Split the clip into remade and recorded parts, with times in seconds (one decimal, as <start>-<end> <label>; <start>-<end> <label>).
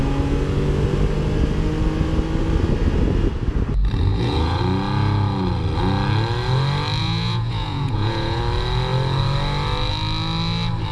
0.0-4.1 recorded; 4.1-4.6 remade; 4.6-7.0 recorded; 7.0-8.4 remade; 8.4-10.9 recorded